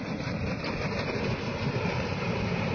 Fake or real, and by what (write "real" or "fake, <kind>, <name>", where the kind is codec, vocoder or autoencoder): real